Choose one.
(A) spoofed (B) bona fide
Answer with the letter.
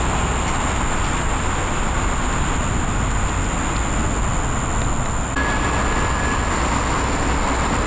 B